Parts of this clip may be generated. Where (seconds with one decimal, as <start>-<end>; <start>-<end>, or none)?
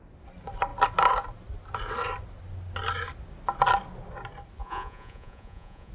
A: 4.6-5.9